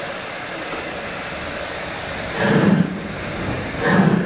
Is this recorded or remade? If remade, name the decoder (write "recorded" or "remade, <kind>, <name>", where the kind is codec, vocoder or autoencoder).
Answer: recorded